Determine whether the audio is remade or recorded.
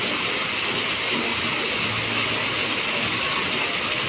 recorded